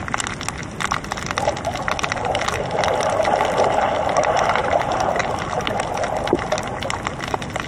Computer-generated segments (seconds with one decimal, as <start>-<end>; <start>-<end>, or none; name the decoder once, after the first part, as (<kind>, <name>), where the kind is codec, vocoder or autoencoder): 4.6-5.2 (vocoder, BigVGAN v2)